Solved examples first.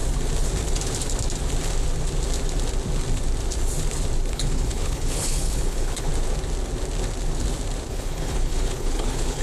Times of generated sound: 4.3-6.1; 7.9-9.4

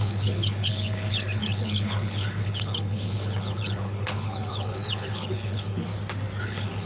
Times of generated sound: 0.0-5.9; 6.4-6.9

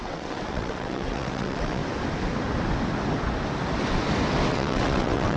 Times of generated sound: 0.0-1.8; 4.5-5.4

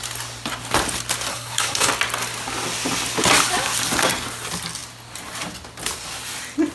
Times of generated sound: 1.3-1.9

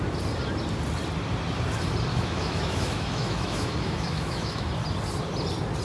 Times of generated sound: 2.1-4.7

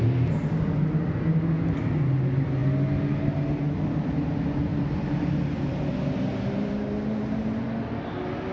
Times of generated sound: none

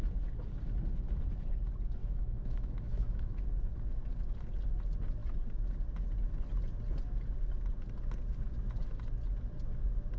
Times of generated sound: 2.0-3.4

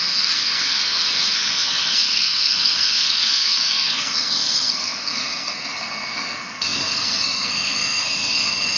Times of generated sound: 0.0-8.8